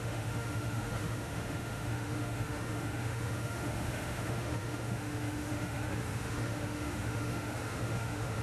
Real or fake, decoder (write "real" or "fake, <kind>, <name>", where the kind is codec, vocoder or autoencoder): fake, autoencoder, DAC-VAE